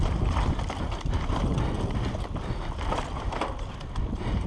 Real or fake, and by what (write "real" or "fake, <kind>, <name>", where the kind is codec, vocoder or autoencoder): real